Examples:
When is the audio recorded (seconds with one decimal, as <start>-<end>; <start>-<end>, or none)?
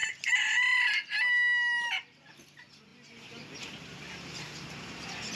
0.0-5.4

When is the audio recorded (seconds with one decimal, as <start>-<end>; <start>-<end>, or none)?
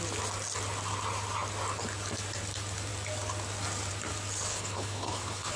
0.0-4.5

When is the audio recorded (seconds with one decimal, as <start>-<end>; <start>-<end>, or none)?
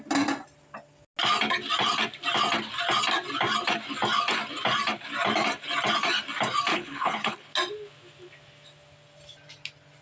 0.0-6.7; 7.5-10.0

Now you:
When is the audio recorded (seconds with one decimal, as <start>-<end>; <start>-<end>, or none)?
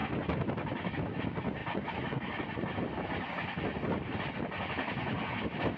0.0-5.8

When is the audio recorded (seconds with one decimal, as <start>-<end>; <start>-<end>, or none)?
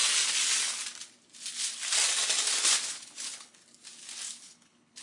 0.0-2.9; 3.6-4.3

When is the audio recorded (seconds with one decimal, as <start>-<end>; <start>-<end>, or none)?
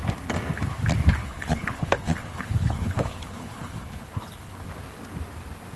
0.0-1.2; 4.7-5.8